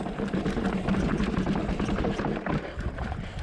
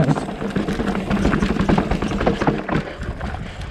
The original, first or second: second